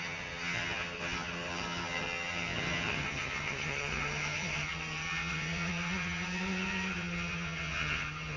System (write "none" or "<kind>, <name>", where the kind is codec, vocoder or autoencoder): vocoder, HiFi-GAN